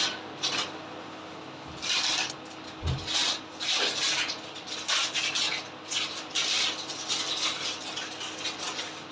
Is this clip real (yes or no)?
yes